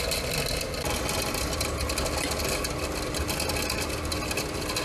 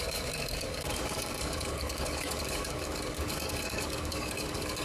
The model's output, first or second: second